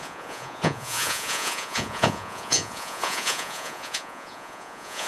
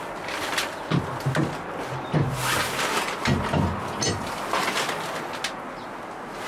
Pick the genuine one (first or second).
second